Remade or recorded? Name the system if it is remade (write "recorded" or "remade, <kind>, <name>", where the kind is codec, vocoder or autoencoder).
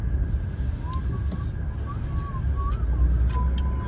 recorded